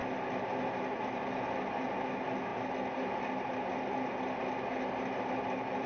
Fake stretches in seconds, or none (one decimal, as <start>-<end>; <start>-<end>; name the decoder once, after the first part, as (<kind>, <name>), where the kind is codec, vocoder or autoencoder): none